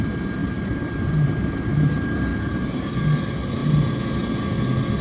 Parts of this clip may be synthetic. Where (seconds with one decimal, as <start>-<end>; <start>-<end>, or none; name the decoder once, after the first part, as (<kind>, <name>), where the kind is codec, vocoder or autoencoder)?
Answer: 0.4-1.9 (vocoder, BigVGAN v2); 2.3-2.8